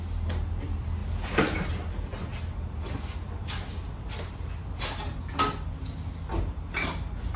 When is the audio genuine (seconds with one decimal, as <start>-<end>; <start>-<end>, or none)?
0.0-7.4